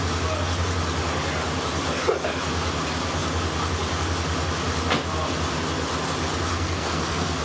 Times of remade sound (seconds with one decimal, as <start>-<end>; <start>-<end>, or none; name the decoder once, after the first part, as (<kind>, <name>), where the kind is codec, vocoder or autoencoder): 6.5-7.4 (codec, SNAC)

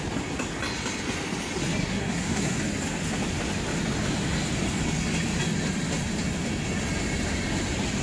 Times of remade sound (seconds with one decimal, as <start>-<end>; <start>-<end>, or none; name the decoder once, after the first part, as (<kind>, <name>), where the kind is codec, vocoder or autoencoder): 1.8-2.6 (codec, SNAC)